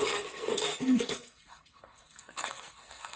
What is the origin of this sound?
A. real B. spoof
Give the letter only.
B